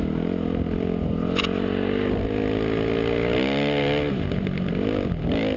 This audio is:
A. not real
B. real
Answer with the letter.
B